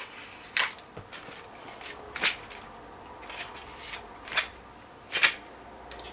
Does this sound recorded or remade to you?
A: recorded